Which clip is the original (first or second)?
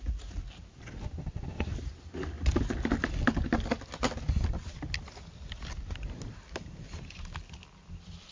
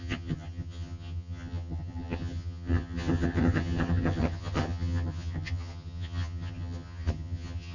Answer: first